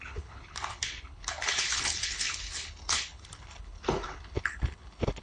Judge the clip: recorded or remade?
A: remade